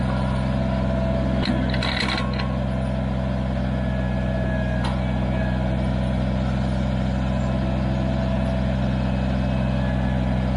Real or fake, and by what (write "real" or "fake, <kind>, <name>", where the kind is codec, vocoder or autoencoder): real